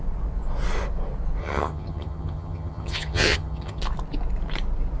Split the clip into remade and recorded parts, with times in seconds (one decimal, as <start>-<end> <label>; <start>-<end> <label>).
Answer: 0.0-1.4 recorded; 1.4-3.8 remade; 3.8-5.0 recorded